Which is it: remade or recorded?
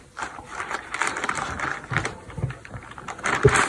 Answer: remade